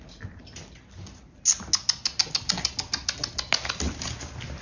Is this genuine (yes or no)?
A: yes